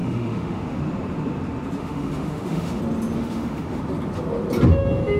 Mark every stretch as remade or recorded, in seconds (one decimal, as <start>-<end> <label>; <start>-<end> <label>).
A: 0.0-0.8 remade; 0.8-1.8 recorded; 1.8-2.8 remade; 2.8-3.2 recorded; 3.2-3.8 remade; 3.8-5.2 recorded